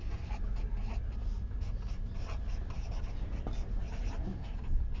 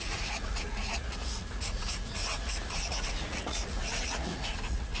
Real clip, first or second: first